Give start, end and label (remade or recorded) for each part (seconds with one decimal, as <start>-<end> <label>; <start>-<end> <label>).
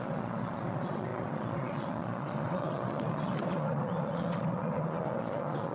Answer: 0.0-5.7 remade